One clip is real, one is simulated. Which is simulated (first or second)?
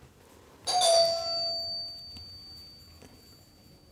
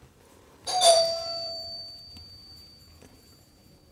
second